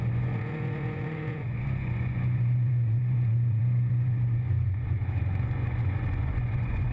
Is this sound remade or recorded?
remade